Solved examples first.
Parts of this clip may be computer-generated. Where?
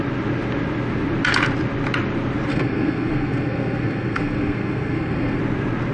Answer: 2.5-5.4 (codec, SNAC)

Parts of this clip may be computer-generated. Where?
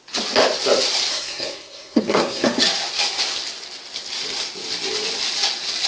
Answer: 1.1-2.6 (codec, SNAC)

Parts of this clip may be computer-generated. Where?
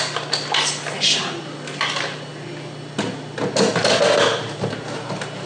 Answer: none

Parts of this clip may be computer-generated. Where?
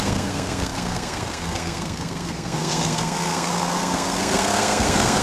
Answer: 0.0-5.2 (codec, SNAC)